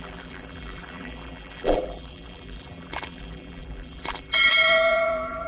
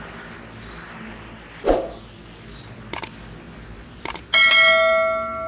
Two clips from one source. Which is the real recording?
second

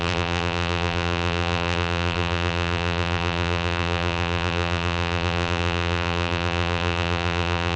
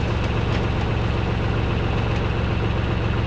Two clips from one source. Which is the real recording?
second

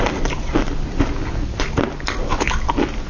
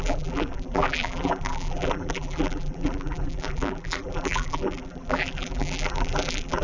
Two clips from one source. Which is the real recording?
first